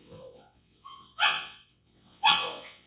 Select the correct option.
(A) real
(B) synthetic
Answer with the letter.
B